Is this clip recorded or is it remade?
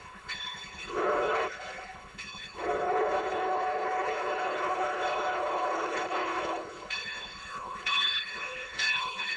remade